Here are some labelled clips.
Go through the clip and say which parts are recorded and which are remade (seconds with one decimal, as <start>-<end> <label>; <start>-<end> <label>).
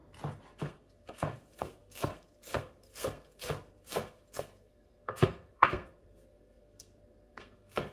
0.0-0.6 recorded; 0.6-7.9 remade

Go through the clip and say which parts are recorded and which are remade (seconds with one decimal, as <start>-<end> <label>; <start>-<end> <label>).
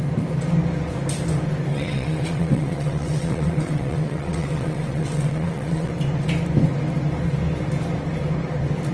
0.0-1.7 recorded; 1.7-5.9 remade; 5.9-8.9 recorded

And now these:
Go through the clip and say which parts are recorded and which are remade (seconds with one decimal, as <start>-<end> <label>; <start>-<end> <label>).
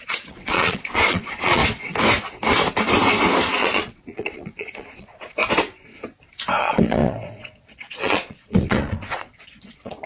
0.0-1.6 remade; 1.6-3.4 recorded; 3.4-5.4 remade; 5.4-6.6 recorded; 6.6-10.1 remade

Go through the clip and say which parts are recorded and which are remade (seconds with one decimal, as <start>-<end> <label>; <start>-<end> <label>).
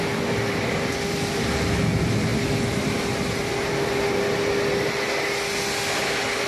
0.0-6.5 recorded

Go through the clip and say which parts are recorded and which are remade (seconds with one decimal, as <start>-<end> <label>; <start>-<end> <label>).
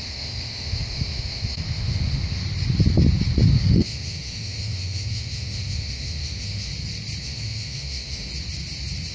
0.0-2.4 remade; 2.4-3.5 recorded; 3.5-6.7 remade; 6.7-7.2 recorded; 7.2-8.3 remade; 8.3-9.1 recorded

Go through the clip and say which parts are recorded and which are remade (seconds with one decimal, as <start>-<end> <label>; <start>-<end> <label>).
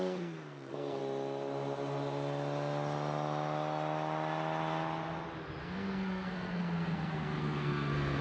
0.0-1.0 remade; 1.0-5.6 recorded; 5.6-8.2 remade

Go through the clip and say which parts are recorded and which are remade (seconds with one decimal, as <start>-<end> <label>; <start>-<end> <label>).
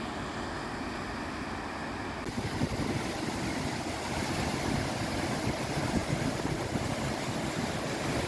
0.0-8.3 recorded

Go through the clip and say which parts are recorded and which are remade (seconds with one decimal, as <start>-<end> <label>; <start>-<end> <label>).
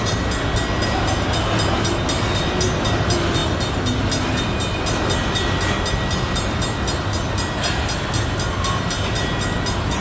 0.0-10.0 recorded